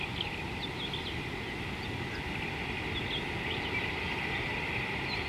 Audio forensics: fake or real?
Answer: real